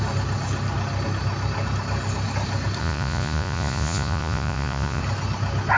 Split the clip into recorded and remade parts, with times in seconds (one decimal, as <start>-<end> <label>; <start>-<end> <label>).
0.0-2.8 recorded; 2.8-5.0 remade; 5.0-5.8 recorded